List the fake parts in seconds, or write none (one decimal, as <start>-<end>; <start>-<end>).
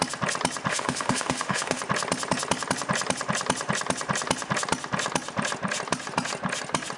0.7-1.8